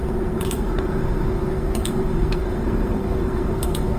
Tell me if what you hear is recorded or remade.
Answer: remade